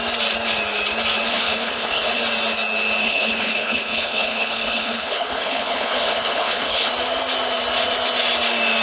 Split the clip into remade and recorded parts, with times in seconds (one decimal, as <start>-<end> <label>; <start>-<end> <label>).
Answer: 0.0-1.3 recorded; 1.3-2.2 remade; 2.2-3.0 recorded; 3.0-6.9 remade; 6.9-8.8 recorded